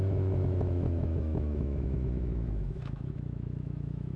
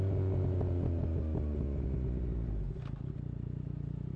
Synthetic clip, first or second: first